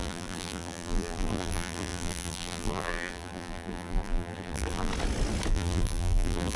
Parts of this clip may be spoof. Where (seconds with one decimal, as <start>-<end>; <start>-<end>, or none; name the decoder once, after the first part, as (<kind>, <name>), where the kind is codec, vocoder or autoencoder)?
0.0-4.9 (vocoder, BigVGAN v2); 5.5-6.6